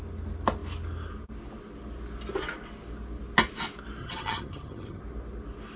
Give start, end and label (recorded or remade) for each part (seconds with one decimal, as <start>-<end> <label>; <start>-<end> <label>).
0.0-4.0 recorded; 4.0-5.0 remade; 5.0-5.8 recorded